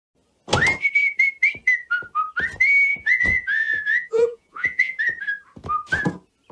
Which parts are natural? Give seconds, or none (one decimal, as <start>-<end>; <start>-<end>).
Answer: 0.0-2.9; 5.0-6.5